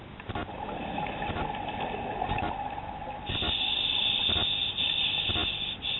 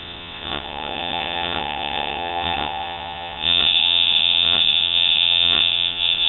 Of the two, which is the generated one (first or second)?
second